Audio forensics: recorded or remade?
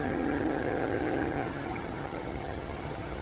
remade